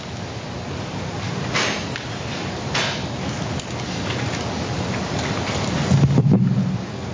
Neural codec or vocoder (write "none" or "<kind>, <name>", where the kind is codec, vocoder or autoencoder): none